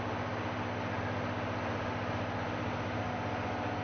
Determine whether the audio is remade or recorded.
recorded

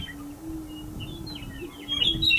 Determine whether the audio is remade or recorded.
recorded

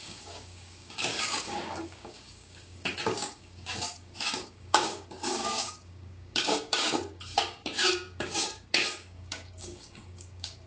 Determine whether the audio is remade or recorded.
remade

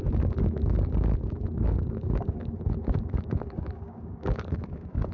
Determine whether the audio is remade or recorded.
remade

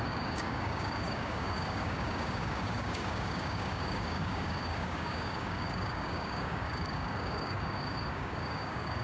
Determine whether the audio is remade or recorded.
remade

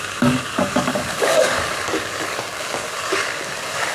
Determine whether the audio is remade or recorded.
remade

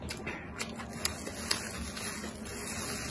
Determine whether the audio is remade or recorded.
recorded